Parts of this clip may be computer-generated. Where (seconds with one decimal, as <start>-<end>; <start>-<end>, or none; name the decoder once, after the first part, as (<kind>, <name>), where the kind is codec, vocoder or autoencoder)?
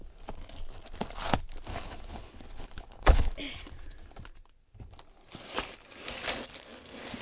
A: 1.7-3.3 (codec, HILCodec)